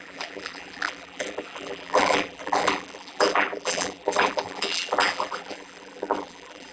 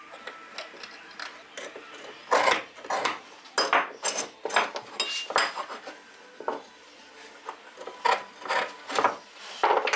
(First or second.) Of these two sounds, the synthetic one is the first